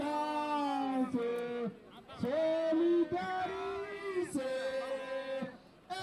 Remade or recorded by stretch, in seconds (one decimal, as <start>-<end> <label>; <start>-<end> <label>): 0.0-6.0 recorded